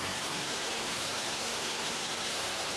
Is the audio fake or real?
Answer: fake